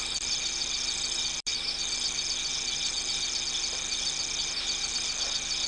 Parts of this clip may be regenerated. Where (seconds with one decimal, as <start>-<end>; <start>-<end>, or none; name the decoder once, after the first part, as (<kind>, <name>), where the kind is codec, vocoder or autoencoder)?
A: none